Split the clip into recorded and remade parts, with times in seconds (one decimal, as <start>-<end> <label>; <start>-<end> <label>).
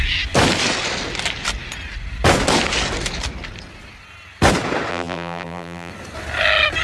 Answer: 0.0-4.9 recorded; 4.9-5.9 remade; 5.9-6.8 recorded